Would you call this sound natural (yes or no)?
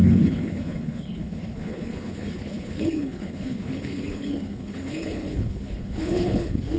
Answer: no